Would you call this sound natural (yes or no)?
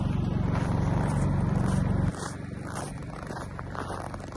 no